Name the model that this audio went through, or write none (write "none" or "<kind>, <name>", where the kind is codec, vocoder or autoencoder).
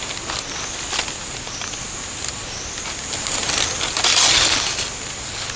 none